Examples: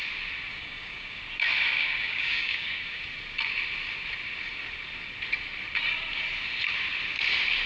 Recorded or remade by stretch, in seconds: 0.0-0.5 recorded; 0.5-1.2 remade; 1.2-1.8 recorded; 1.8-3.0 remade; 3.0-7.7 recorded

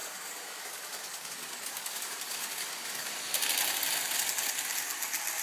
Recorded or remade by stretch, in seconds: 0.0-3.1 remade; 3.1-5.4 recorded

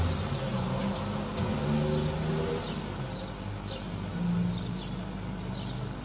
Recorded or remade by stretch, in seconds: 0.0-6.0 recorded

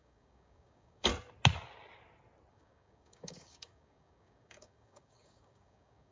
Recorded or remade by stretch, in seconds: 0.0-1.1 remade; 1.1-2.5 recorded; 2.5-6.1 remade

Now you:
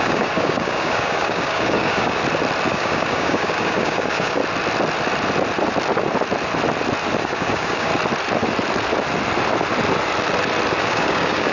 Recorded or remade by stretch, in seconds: 0.0-2.2 remade; 2.2-2.7 recorded; 2.7-4.4 remade; 4.4-7.2 recorded; 7.2-7.9 remade; 7.9-10.8 recorded; 10.8-11.5 remade